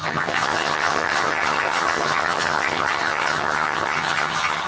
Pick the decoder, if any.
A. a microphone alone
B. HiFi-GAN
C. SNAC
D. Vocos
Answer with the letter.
B